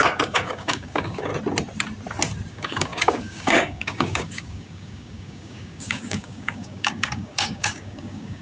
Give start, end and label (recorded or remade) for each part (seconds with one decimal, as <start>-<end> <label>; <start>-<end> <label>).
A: 0.0-1.3 remade; 1.3-2.5 recorded; 2.5-8.4 remade